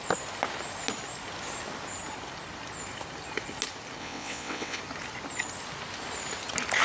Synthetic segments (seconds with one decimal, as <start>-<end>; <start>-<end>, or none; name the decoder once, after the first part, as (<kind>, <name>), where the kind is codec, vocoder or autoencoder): 4.0-4.8 (vocoder, WaveNeXt)